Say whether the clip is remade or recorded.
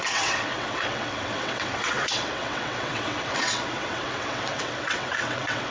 remade